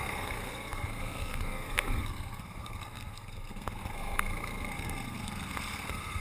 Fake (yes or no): yes